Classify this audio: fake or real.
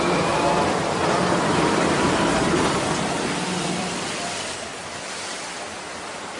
fake